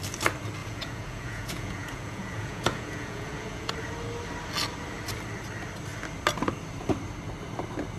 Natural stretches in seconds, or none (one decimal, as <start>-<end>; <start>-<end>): 0.0-0.6; 3.7-8.0